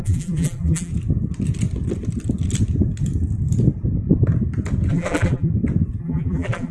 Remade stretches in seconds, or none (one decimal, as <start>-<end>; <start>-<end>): 0.0-0.9; 4.9-5.5; 6.0-6.7

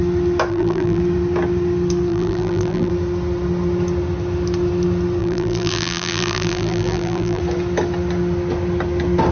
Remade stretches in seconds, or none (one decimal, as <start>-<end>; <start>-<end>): 0.5-1.0; 2.1-2.9; 5.2-7.4